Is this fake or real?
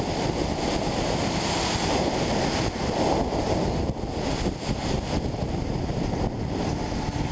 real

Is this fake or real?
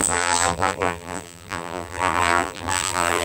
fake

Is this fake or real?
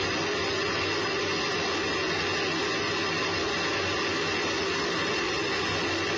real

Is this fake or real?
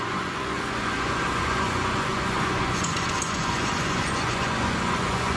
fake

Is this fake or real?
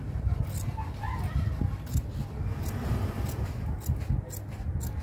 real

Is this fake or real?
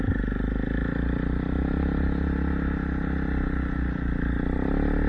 real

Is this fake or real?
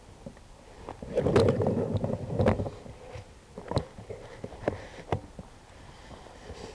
real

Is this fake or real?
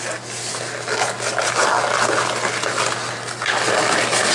real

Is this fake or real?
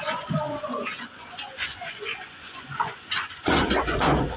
fake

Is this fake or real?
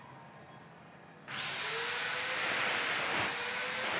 real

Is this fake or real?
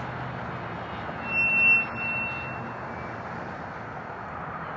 real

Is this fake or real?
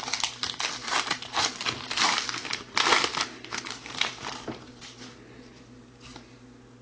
real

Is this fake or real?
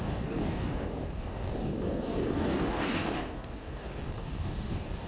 fake